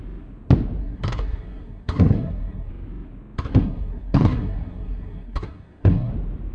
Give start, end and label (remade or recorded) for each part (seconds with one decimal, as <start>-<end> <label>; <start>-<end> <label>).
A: 0.0-0.8 recorded; 0.8-2.7 remade; 2.7-3.5 recorded; 3.5-6.1 remade; 6.1-6.5 recorded